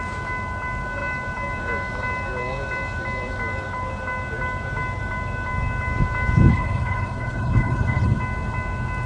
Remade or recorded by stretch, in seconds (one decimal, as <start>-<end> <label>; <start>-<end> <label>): 0.0-6.5 recorded; 6.5-8.2 remade; 8.2-9.1 recorded